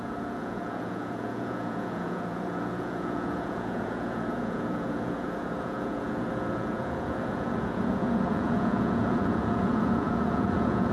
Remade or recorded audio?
remade